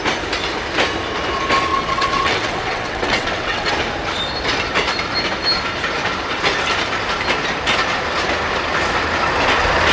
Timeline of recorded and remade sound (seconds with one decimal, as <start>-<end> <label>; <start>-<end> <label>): 0.0-1.7 recorded; 1.7-3.7 remade; 3.7-9.9 recorded